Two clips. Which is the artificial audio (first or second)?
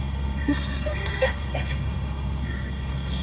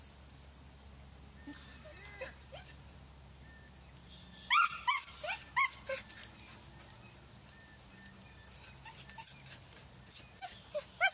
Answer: first